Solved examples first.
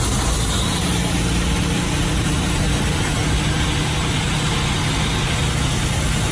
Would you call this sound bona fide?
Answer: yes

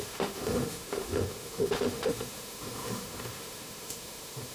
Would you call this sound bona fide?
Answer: no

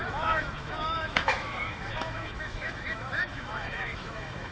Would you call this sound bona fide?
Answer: no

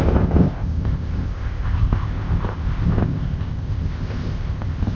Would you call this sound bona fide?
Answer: no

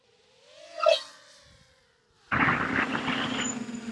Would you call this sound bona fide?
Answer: yes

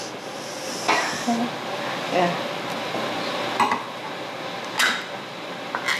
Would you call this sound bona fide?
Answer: yes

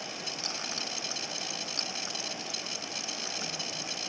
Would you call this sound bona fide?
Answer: yes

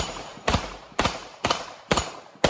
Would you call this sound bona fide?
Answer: no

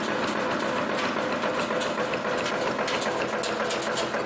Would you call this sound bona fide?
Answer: yes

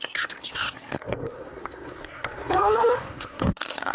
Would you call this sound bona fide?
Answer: no